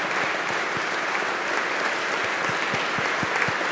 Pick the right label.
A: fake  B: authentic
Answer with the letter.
B